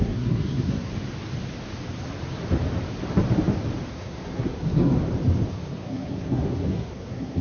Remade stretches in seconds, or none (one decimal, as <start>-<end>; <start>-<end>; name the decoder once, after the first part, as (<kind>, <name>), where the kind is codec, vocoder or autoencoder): 0.0-0.9 (codec, SNAC); 3.9-5.0; 5.5-7.4